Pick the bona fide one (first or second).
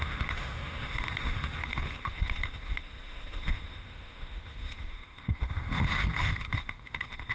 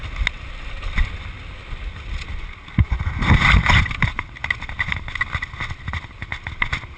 second